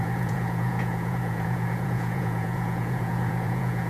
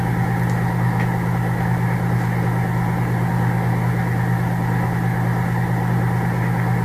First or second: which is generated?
first